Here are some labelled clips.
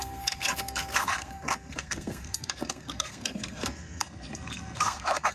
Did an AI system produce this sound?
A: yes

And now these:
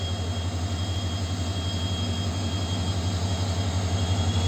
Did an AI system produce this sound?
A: no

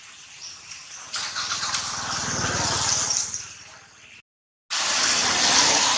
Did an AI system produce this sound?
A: no